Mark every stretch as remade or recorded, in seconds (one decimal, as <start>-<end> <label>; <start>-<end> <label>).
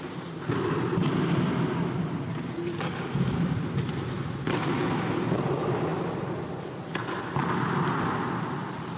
0.0-9.0 recorded